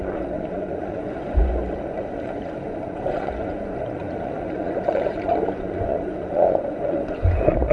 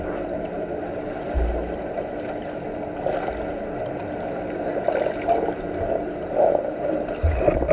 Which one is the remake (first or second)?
first